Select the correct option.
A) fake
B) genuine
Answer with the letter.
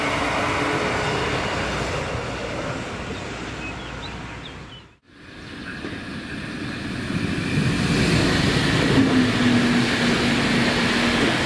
B